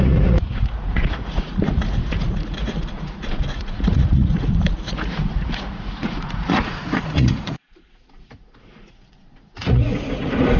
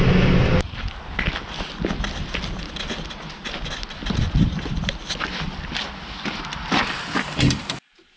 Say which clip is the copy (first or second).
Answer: first